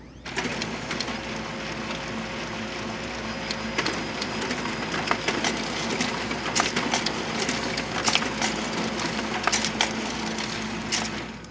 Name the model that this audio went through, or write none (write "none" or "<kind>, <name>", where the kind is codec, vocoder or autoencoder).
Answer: none